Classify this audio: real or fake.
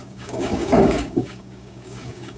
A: fake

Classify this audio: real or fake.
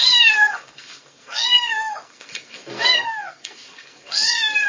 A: fake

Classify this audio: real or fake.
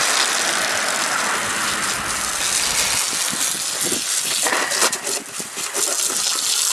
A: real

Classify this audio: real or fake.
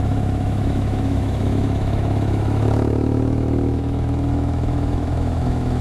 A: fake